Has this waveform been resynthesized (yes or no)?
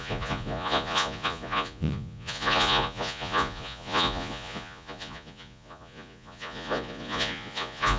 yes